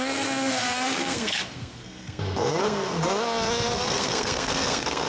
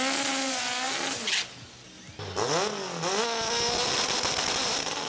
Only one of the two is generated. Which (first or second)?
first